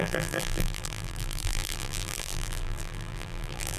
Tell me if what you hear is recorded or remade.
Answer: remade